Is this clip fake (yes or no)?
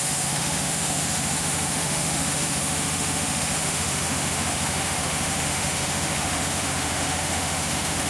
yes